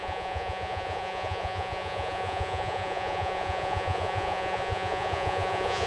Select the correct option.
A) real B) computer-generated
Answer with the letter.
B